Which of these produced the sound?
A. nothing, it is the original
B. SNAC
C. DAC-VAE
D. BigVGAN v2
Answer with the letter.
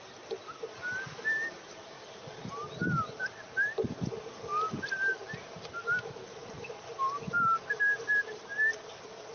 A